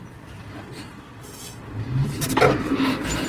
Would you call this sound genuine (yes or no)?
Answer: yes